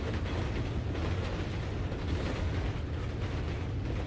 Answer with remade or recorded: recorded